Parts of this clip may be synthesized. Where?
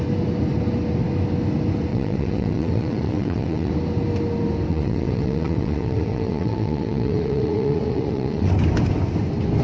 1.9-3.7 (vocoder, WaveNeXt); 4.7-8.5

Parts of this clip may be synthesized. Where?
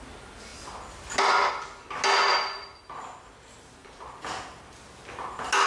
2.3-2.8 (vocoder, BigVGAN v2); 3.8-4.6